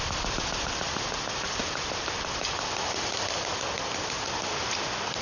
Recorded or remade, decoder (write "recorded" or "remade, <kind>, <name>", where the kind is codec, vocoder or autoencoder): remade, vocoder, BigVGAN v2